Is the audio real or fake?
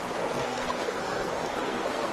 fake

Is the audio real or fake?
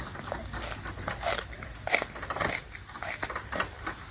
real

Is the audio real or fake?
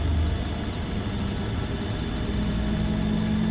real